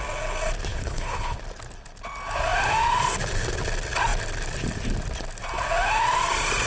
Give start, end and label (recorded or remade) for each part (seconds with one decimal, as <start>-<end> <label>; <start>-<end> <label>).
0.0-0.7 recorded; 0.7-1.4 remade; 1.4-6.7 recorded